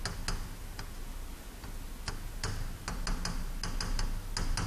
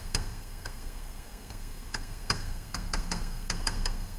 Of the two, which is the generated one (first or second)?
second